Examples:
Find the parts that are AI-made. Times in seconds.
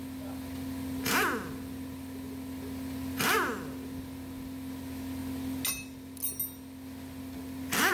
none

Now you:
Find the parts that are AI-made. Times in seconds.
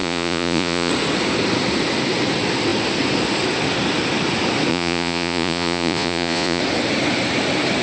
0.0-0.9 (vocoder, Vocos); 4.7-6.6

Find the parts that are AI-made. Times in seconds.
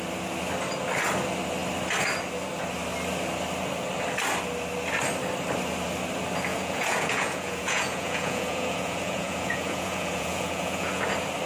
6.5-11.0 (vocoder, Vocos)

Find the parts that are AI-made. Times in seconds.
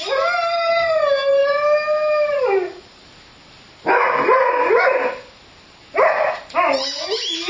none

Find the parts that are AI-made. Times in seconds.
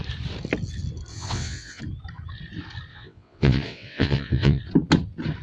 1.1-1.8 (vocoder, WaveNeXt); 2.9-4.6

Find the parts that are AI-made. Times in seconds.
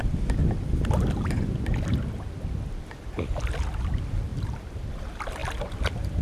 none